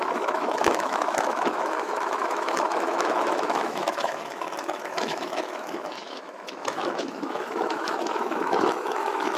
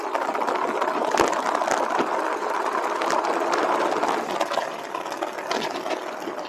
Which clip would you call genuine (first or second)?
second